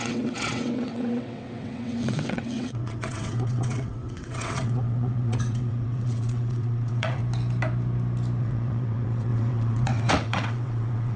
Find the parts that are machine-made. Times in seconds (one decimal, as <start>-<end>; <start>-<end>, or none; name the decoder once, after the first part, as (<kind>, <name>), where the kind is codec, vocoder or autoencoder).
0.0-7.2 (vocoder, WaveNeXt); 8.4-11.2